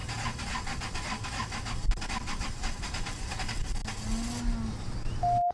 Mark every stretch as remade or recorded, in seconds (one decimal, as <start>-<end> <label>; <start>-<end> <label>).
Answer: 0.0-3.8 remade; 3.8-4.7 recorded; 4.7-5.5 remade